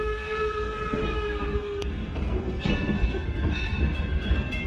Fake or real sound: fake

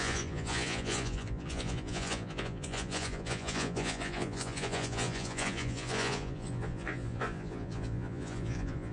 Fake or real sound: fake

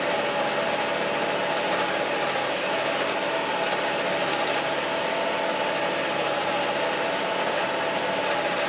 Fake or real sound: real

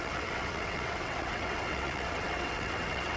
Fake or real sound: fake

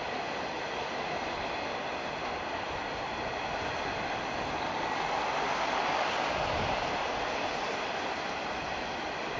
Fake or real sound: real